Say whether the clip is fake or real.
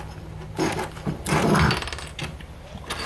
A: real